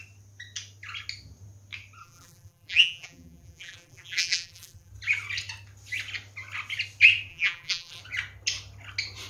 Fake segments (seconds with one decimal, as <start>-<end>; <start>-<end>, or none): 2.0-4.9; 7.3-8.0